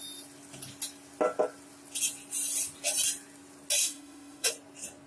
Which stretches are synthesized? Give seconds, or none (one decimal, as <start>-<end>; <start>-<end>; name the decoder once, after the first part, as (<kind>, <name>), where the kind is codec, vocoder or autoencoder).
3.8-4.5 (autoencoder, DAC-VAE)